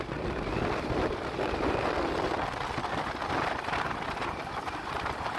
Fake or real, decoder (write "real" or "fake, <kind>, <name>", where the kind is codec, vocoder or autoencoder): real